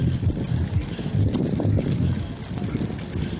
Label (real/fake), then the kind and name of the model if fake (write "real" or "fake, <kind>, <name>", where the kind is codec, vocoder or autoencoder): real